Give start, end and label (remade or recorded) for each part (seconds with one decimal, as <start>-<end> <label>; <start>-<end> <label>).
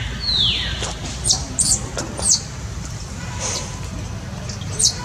0.0-1.9 remade; 1.9-2.6 recorded; 2.6-3.9 remade; 3.9-4.6 recorded; 4.6-5.0 remade